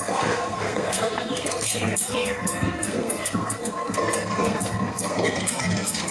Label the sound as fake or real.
fake